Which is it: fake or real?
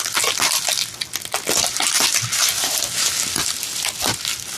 real